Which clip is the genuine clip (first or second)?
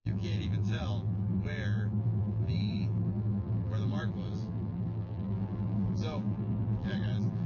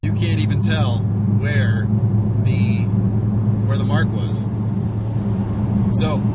second